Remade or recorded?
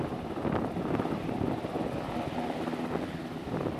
recorded